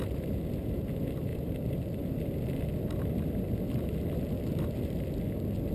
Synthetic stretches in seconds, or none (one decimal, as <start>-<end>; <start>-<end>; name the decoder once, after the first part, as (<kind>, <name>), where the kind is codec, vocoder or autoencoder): 1.3-2.1 (vocoder, BigVGAN v2)